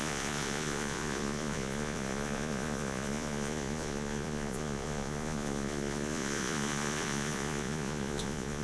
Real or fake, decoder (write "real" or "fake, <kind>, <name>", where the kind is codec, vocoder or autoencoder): fake, vocoder, Vocos